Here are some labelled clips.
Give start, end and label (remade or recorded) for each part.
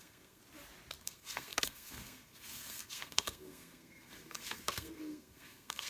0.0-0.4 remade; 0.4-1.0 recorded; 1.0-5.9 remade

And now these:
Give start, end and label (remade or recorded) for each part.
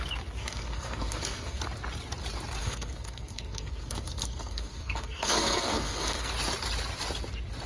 0.0-0.4 recorded; 0.4-1.6 remade; 1.6-2.6 recorded; 2.6-6.3 remade; 6.3-7.7 recorded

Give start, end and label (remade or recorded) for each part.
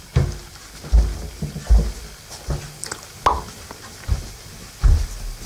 0.0-5.5 recorded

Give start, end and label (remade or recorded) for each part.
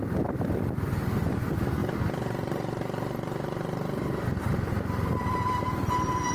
0.0-6.3 recorded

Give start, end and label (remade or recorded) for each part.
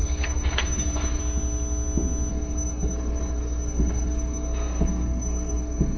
0.0-1.2 remade; 1.2-2.3 recorded; 2.3-6.0 remade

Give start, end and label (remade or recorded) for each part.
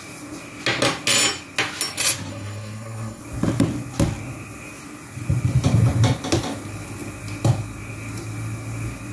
0.0-2.3 recorded; 2.3-3.2 remade; 3.2-9.1 recorded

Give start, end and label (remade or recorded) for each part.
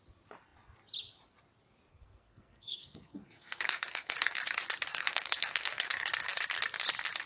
0.0-1.9 recorded; 1.9-4.4 remade; 4.4-4.9 recorded; 4.9-6.1 remade; 6.1-7.3 recorded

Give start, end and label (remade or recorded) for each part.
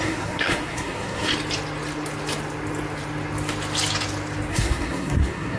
0.0-1.3 remade; 1.3-4.5 recorded; 4.5-5.6 remade